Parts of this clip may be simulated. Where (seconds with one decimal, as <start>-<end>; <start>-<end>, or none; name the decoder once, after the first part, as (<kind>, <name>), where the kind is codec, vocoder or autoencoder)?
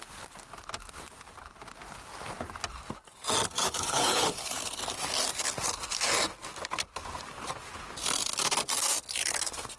3.6-4.8 (codec, HILCodec)